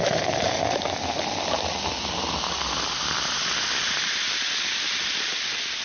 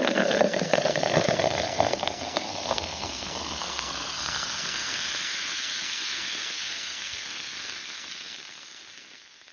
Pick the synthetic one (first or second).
second